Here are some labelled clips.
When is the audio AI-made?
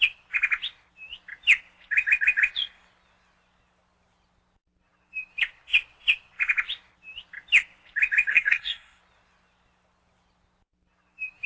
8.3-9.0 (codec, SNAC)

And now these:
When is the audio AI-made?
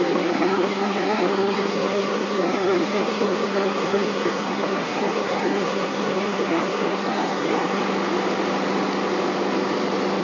0.0-7.8 (codec, SNAC)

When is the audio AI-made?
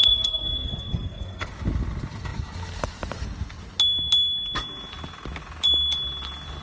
0.0-1.5 (codec, SNAC)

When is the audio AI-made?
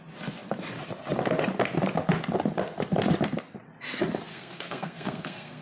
4.3-5.6 (codec, SNAC)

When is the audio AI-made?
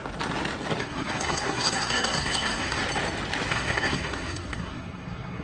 0.8-2.8 (codec, SNAC); 3.5-5.4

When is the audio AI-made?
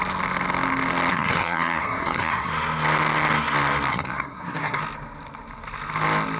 1.1-2.5 (codec, SNAC); 3.9-4.8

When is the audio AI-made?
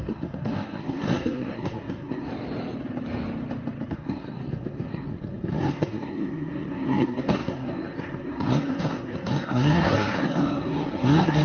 0.0-2.3 (codec, SNAC); 3.9-11.4